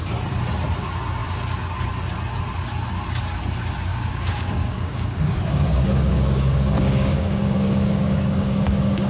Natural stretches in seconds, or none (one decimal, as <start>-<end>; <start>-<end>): 0.0-3.9